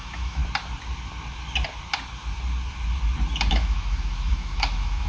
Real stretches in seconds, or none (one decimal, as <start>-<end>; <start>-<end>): 0.4-3.5